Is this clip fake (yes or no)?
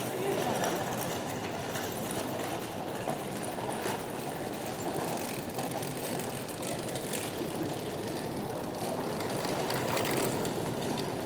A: yes